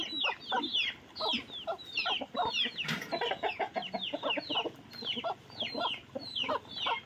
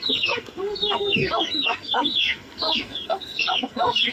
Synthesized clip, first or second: second